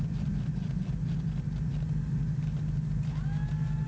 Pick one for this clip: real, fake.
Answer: real